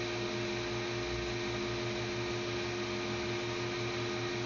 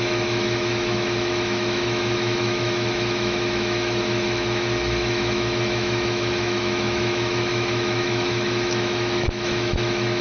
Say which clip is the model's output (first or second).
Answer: second